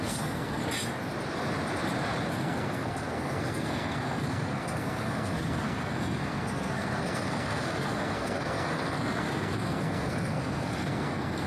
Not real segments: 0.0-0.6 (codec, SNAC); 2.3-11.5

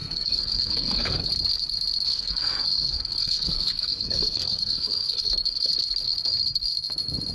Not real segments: 0.0-1.3 (codec, SNAC); 2.1-5.7